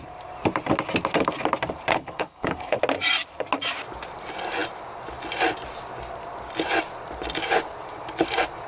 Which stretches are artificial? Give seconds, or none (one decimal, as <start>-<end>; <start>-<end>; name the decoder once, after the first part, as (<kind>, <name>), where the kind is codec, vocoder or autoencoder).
1.9-2.8 (codec, HILCodec)